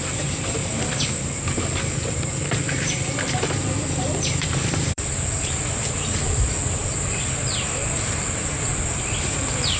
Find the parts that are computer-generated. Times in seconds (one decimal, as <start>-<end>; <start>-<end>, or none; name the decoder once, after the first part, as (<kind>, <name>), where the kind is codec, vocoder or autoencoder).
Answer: 0.0-8.7 (vocoder, BigVGAN v2); 9.2-9.8